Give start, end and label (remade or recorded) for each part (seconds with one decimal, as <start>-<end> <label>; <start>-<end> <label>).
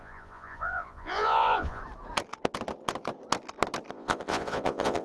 0.0-1.8 remade; 1.8-3.9 recorded; 3.9-5.0 remade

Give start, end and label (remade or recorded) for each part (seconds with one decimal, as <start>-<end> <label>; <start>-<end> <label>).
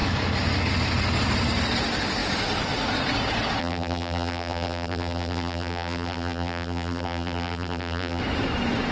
0.0-3.6 recorded; 3.6-8.2 remade; 8.2-8.9 recorded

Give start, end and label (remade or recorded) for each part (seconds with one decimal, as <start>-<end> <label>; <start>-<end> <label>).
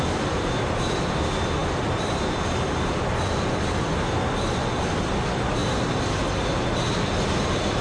0.0-5.6 remade; 5.6-6.9 recorded; 6.9-7.8 remade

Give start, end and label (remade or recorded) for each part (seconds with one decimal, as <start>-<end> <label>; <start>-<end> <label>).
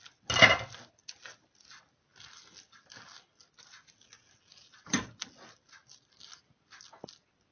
0.0-7.5 recorded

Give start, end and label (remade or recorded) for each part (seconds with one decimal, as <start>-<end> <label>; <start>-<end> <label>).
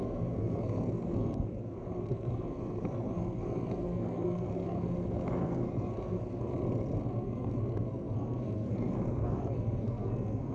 0.0-6.5 remade; 6.5-7.1 recorded; 7.1-10.5 remade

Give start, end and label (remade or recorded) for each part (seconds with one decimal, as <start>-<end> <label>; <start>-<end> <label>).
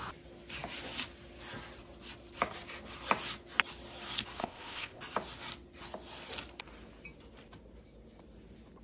0.0-4.4 recorded; 4.4-5.0 remade; 5.0-8.8 recorded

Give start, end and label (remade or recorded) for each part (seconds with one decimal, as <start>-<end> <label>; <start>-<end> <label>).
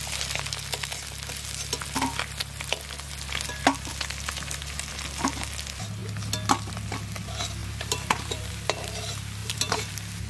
0.0-7.6 recorded; 7.6-8.5 remade; 8.5-9.4 recorded; 9.4-9.9 remade; 9.9-10.3 recorded